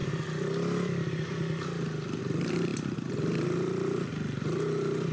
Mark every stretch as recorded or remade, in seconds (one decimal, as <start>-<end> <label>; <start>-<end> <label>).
0.0-5.1 recorded